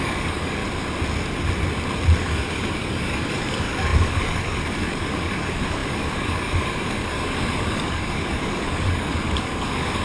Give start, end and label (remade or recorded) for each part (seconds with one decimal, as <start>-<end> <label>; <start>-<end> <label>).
0.0-0.6 remade; 0.6-2.2 recorded; 2.2-10.0 remade